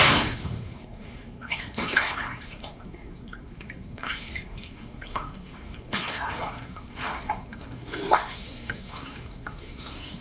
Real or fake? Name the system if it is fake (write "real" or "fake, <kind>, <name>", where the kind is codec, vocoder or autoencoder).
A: fake, codec, SNAC